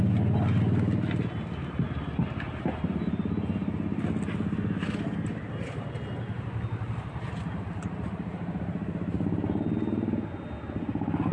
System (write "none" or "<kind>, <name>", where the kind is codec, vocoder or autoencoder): none